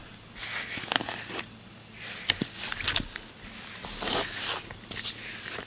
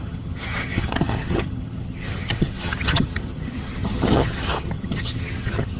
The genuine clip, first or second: first